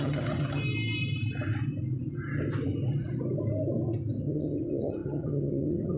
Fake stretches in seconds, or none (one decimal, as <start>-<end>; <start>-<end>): 0.0-0.6; 4.2-6.0